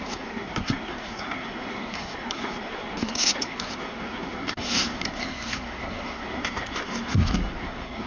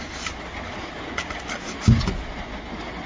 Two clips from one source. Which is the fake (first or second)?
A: first